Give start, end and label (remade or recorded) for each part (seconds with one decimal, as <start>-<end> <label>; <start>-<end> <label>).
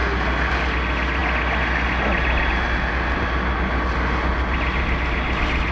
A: 0.0-5.7 recorded